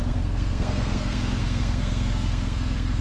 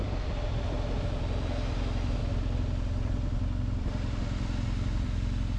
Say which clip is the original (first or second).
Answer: second